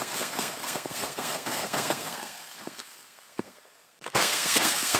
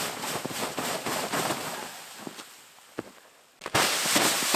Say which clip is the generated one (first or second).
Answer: first